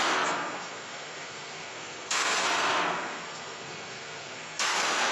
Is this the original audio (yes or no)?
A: no